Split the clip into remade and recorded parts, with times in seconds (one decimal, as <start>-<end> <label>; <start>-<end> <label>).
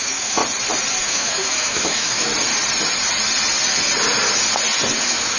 0.0-0.4 remade; 0.4-1.0 recorded; 1.0-2.3 remade; 2.3-5.0 recorded; 5.0-5.4 remade